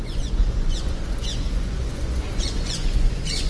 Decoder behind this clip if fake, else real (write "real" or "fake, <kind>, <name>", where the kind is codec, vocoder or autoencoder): fake, vocoder, Vocos